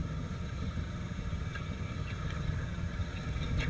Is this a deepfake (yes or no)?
yes